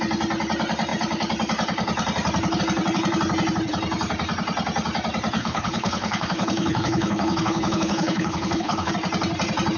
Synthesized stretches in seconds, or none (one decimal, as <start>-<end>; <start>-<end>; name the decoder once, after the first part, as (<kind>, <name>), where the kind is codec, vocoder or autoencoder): 5.4-8.9 (codec, HILCodec)